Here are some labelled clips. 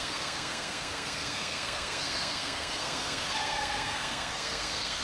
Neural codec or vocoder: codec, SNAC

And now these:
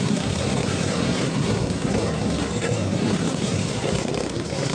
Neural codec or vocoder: codec, SNAC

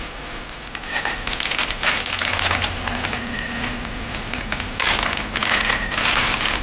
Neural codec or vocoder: none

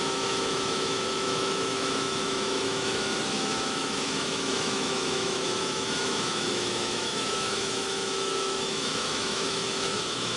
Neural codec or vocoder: autoencoder, DAC-VAE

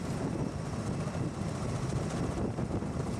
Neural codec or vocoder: none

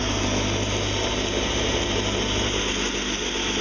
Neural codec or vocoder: none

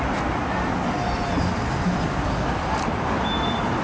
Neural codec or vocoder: none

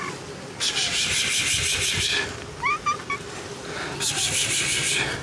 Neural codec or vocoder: none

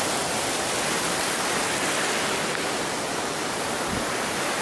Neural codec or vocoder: none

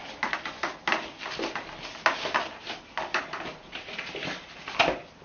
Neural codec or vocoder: none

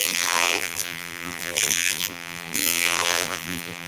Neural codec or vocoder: vocoder, BigVGAN v2